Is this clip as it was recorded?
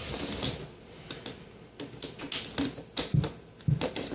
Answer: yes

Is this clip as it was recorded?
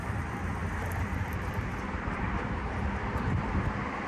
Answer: no